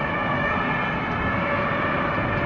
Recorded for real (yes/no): yes